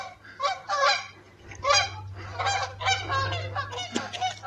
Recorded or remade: recorded